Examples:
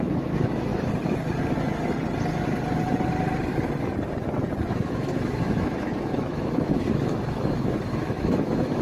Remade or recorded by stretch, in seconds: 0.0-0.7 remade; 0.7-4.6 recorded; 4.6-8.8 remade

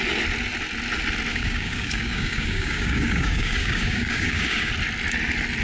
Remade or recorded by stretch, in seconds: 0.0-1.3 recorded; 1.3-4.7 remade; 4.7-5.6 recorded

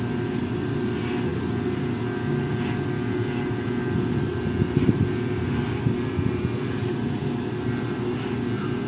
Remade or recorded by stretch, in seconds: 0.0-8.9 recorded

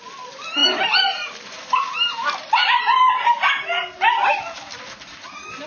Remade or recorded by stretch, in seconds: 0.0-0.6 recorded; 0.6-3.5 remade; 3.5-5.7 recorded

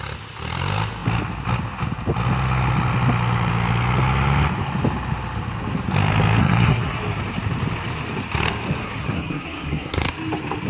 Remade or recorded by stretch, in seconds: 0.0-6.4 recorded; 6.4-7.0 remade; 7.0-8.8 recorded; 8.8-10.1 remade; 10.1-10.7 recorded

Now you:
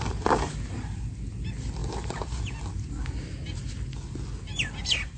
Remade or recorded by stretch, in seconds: 0.0-5.2 recorded

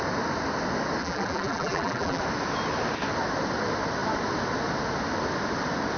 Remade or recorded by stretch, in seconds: 0.0-1.0 recorded; 1.0-2.2 remade; 2.2-6.0 recorded